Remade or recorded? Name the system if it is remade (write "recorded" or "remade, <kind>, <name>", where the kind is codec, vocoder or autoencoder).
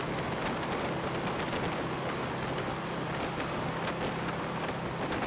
recorded